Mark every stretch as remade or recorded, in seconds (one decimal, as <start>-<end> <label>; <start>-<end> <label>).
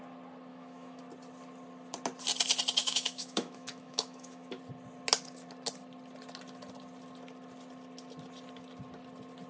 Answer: 0.0-0.5 recorded; 0.5-1.0 remade; 1.0-2.8 recorded; 2.8-4.6 remade; 4.6-9.5 recorded